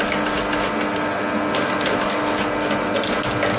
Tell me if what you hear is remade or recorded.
recorded